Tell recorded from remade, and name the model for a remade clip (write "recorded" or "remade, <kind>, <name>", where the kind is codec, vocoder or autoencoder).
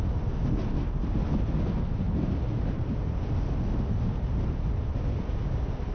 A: recorded